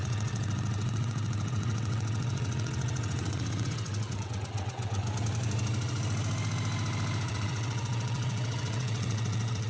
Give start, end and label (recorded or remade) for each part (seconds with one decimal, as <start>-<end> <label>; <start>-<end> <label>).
0.0-5.0 remade; 5.0-7.3 recorded; 7.3-9.7 remade